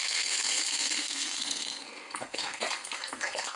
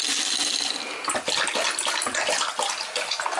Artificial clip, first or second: first